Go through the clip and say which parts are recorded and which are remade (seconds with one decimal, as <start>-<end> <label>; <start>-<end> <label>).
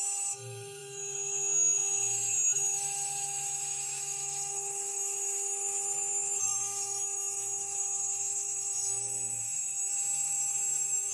0.0-11.1 remade